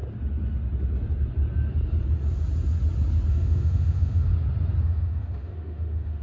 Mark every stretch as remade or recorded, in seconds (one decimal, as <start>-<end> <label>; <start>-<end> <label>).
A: 0.0-3.3 recorded; 3.3-4.3 remade; 4.3-4.8 recorded; 4.8-6.2 remade